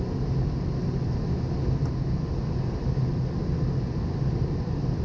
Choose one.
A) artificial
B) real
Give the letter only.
B